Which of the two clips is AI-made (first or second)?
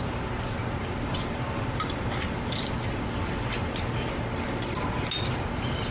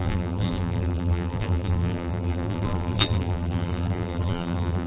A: second